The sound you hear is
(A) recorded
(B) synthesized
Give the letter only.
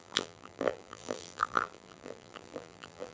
B